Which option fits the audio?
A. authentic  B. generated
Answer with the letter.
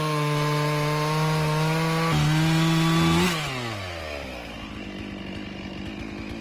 A